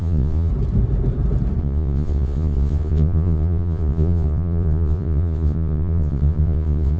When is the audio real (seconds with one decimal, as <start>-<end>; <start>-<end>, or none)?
0.5-1.6